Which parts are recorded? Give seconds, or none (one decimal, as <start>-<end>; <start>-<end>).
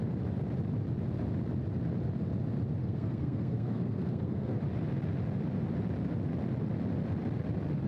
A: 0.0-2.8; 4.6-7.9